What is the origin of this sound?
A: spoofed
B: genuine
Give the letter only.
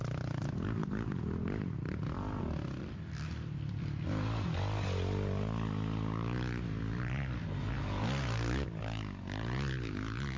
B